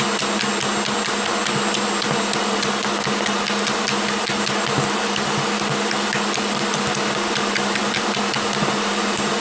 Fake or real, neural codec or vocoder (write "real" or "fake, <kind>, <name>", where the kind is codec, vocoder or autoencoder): real